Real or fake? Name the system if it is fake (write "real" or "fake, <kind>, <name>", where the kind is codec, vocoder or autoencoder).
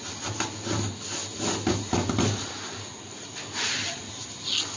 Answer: real